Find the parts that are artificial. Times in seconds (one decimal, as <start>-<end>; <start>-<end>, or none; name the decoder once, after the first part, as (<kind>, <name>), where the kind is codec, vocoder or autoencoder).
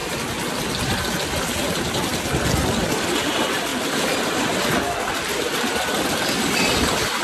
none